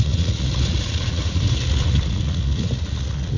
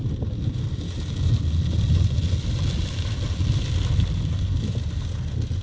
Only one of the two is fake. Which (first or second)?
first